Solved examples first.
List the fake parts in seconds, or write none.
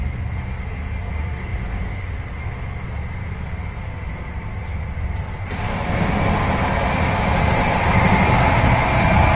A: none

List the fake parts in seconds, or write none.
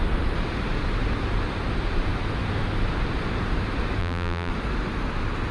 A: 4.0-4.5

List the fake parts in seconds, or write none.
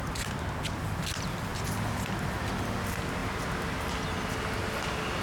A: 3.2-3.9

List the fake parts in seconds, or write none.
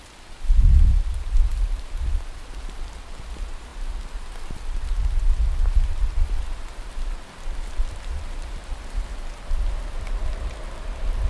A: 1.5-2.4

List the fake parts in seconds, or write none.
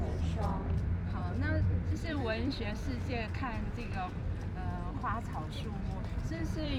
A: 0.0-4.2; 6.0-6.8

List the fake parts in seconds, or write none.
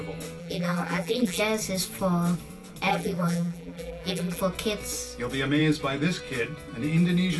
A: 0.4-1.4; 2.9-4.4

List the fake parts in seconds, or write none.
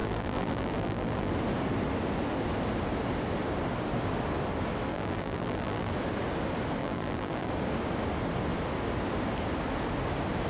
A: 0.0-1.3; 4.9-5.9; 6.8-7.5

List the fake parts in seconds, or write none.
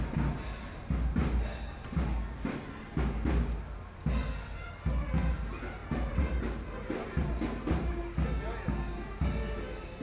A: 5.8-8.0